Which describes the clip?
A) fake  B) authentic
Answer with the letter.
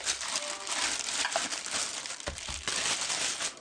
B